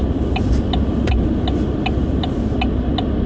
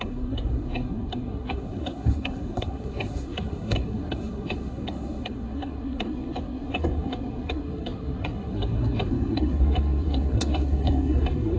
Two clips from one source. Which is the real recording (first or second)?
first